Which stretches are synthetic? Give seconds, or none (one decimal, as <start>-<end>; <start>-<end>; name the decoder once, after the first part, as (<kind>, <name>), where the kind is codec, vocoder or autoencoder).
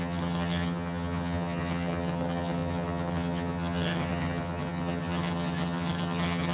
0.0-6.5 (vocoder, HiFi-GAN)